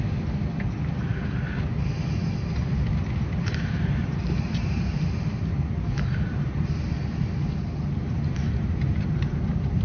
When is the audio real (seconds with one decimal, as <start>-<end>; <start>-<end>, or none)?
1.5-3.2